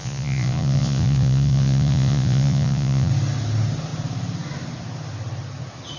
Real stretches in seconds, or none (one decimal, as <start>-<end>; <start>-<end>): 3.1-6.0